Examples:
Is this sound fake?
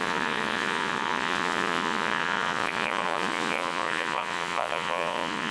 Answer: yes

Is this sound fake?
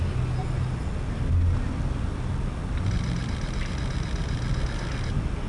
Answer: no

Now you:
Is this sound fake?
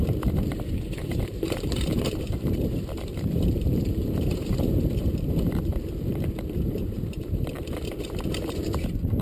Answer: yes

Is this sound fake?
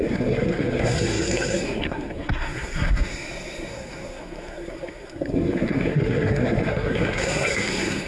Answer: yes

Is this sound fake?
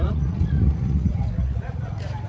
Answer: yes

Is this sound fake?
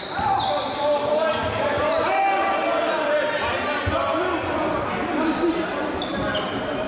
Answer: no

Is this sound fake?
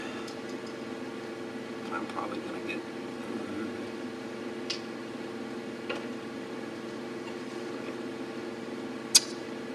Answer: no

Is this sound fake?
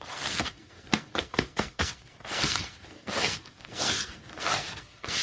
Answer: yes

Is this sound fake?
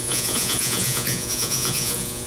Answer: yes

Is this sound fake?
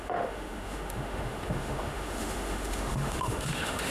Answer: yes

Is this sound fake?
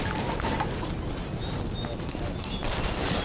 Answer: no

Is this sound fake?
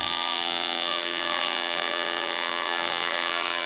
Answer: yes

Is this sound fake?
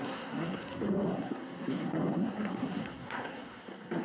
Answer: yes